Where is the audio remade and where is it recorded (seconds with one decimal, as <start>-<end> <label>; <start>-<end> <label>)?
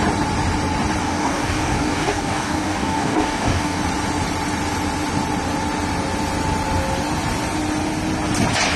0.0-1.0 recorded; 1.0-3.8 remade; 3.8-8.8 recorded